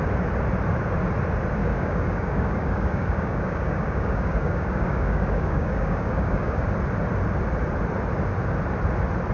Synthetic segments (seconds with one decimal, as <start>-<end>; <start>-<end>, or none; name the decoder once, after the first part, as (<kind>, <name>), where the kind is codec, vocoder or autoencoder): 1.6-6.6 (codec, DAC)

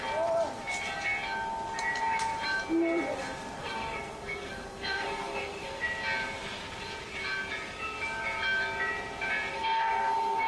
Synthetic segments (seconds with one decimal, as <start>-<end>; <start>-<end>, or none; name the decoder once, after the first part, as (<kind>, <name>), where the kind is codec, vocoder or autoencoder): 3.6-5.8 (codec, SNAC); 9.5-10.5

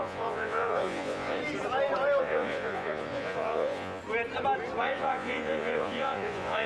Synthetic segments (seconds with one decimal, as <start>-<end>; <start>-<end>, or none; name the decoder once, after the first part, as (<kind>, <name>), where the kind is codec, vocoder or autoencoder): 0.0-1.4 (vocoder, Vocos); 2.2-4.0; 4.8-6.7

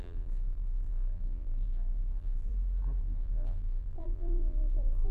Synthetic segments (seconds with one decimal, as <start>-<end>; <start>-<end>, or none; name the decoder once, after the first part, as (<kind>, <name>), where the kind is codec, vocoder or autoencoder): 0.0-2.5 (vocoder, BigVGAN v2); 3.0-5.1

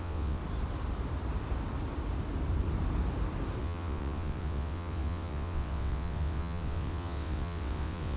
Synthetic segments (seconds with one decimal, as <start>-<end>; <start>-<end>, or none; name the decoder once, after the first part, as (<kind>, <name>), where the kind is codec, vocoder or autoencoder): 0.0-0.4 (vocoder, WaveNeXt); 3.6-8.2